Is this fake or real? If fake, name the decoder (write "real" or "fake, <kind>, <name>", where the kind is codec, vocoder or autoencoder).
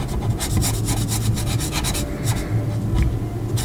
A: real